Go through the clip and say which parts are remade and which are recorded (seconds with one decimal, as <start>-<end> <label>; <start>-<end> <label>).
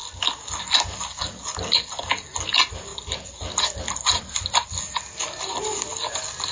0.0-6.5 recorded